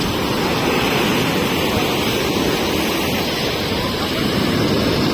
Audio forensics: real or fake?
real